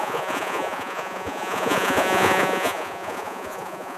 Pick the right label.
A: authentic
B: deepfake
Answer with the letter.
B